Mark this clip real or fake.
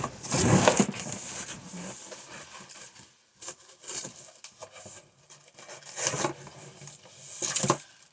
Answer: real